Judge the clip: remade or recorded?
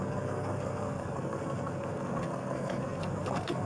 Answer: remade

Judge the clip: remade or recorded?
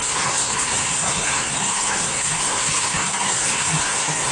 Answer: remade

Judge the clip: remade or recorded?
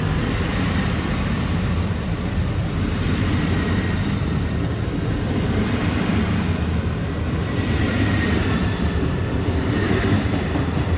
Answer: recorded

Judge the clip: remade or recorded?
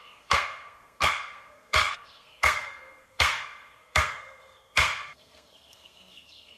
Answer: remade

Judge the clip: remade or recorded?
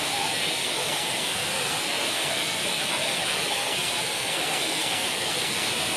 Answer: remade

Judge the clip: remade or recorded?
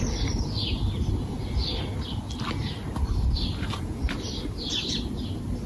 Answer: recorded